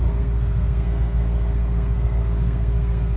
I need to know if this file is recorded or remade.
remade